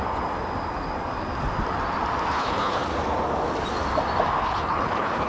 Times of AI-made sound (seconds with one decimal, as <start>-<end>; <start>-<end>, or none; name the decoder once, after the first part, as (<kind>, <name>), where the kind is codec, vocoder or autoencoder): 2.3-2.9 (codec, HILCodec); 4.4-5.3

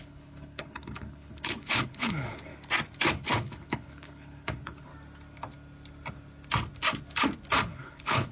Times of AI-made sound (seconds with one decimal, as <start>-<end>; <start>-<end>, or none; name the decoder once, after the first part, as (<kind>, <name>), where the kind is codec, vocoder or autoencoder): 0.0-2.5 (codec, HILCodec); 3.1-4.9; 7.6-8.3

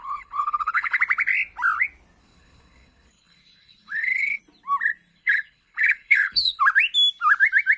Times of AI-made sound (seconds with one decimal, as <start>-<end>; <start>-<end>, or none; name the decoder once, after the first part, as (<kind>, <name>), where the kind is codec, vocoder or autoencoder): 0.0-1.0 (codec, HILCodec); 2.2-4.4; 5.1-6.6

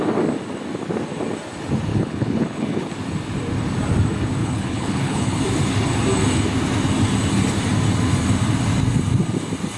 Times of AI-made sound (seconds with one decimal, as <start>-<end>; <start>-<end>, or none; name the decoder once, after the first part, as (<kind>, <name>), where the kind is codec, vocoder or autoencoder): 1.9-2.9 (codec, HILCodec); 4.4-5.4

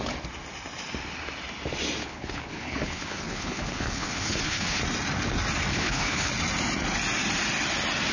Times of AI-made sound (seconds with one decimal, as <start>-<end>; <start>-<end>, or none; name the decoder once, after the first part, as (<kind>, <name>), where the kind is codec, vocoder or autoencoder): 2.0-4.8 (codec, HILCodec); 5.7-6.3

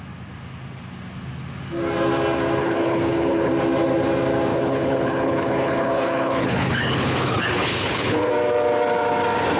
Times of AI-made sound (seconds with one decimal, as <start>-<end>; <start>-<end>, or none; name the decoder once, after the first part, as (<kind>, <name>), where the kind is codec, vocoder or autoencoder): 2.6-3.5 (codec, HILCodec); 4.5-8.3

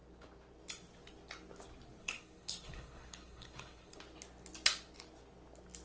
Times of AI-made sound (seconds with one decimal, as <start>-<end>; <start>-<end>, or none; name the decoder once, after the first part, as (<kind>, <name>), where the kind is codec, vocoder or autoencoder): 2.0-4.0 (codec, HILCodec)